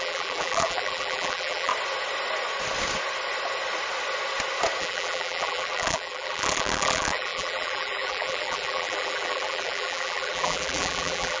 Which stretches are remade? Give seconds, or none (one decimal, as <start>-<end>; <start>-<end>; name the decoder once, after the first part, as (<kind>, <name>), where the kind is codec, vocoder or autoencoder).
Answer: 0.0-1.7 (vocoder, BigVGAN v2); 4.8-11.4